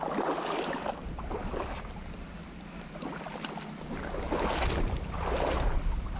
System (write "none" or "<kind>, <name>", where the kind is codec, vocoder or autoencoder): none